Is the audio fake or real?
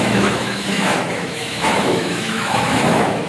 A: fake